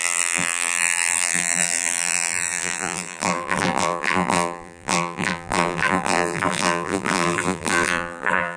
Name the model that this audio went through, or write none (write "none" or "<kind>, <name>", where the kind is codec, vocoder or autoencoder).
vocoder, BigVGAN v2